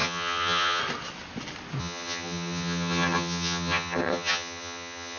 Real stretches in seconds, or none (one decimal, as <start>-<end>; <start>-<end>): 0.8-1.8